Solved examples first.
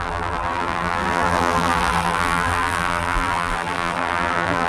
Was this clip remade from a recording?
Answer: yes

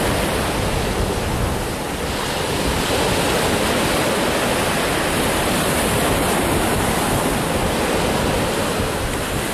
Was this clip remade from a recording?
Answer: no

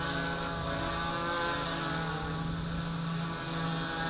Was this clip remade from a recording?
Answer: yes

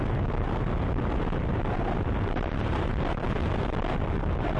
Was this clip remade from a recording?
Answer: yes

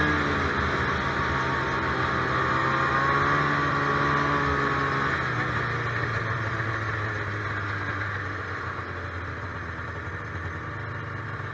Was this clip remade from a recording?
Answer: no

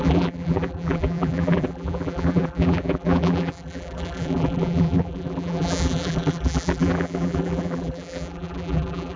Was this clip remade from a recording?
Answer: yes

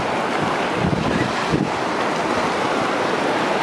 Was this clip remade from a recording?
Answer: no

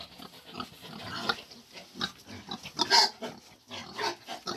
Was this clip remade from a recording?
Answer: no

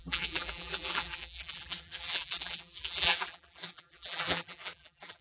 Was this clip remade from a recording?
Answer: yes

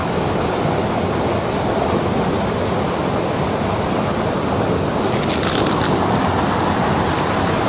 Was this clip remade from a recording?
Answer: no